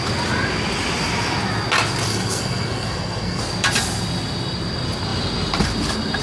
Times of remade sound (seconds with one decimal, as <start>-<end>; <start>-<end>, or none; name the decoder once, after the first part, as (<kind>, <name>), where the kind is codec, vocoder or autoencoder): 2.1-3.4 (codec, SNAC)